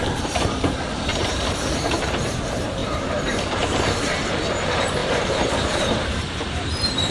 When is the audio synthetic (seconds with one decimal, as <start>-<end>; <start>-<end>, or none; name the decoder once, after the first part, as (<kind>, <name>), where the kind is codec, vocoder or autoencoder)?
0.0-7.1 (vocoder, BigVGAN v2)